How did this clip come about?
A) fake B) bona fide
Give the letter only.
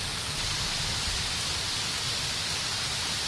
B